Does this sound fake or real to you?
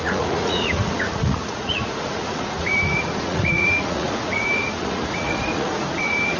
fake